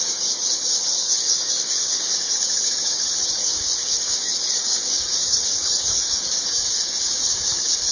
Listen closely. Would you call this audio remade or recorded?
remade